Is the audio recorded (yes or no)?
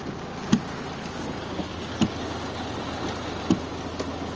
yes